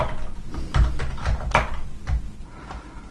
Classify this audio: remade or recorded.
recorded